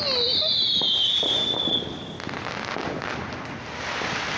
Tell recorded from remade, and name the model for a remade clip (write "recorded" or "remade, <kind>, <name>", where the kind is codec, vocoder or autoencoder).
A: recorded